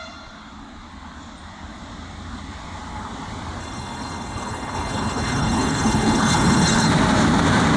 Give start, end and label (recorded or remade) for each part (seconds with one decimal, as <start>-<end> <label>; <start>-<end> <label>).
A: 0.0-3.6 recorded; 3.6-6.9 remade; 6.9-7.8 recorded